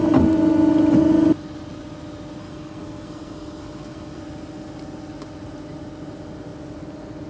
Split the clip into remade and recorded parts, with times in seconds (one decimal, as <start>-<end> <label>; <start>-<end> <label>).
0.0-2.4 recorded; 2.4-4.2 remade; 4.2-7.3 recorded